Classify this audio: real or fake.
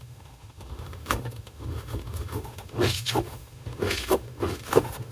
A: fake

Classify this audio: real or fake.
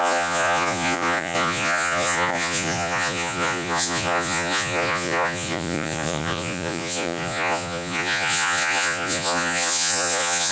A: fake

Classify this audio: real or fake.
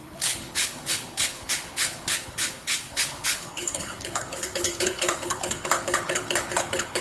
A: fake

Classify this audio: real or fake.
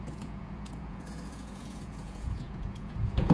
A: fake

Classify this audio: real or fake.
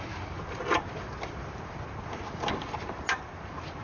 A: fake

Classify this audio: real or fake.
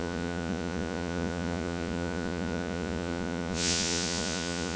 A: fake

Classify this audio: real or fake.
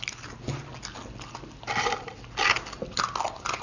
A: real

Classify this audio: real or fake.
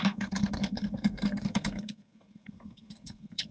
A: fake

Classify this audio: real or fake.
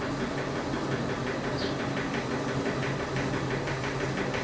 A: real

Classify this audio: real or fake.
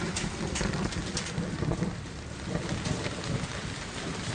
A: fake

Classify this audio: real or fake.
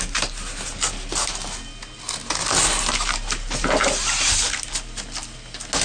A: real